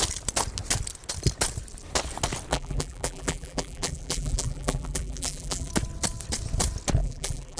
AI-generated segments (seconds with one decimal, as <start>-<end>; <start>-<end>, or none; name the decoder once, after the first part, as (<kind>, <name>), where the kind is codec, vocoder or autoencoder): 2.5-5.7 (vocoder, BigVGAN v2); 7.0-7.6